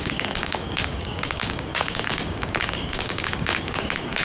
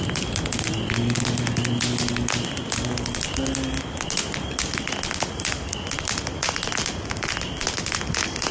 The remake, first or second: first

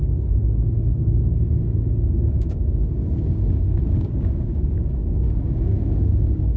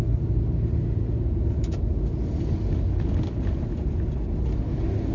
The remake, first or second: first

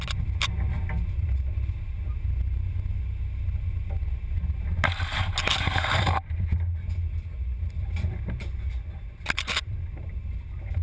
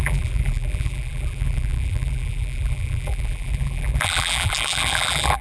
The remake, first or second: second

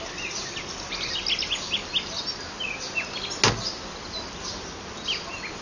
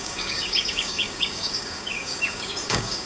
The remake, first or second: second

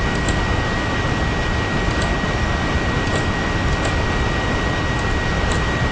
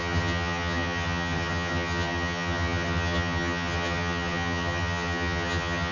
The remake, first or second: second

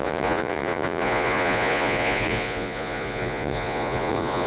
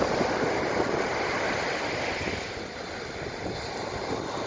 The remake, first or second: first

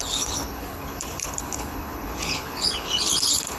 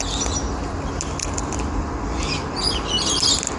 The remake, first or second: first